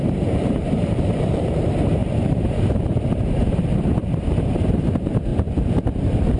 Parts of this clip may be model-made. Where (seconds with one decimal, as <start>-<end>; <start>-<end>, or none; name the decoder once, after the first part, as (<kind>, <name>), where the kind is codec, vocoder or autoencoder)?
0.0-5.3 (vocoder, BigVGAN v2)